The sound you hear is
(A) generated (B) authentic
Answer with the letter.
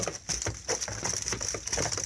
B